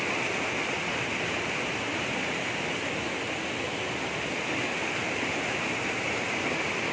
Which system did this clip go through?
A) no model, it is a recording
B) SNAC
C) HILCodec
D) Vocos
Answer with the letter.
A